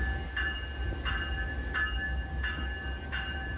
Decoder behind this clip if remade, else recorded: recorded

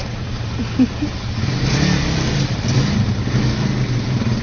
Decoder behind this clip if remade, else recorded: recorded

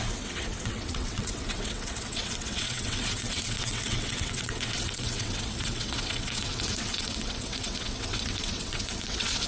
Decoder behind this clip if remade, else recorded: remade, vocoder, WaveNeXt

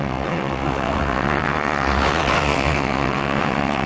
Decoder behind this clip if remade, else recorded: remade, vocoder, WaveNeXt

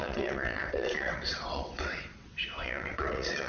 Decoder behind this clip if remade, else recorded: remade, vocoder, WaveNeXt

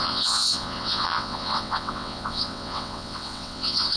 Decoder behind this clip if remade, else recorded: remade, vocoder, WaveNeXt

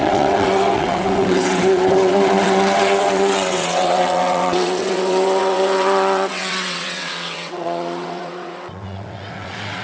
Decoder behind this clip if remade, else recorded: remade, vocoder, WaveNeXt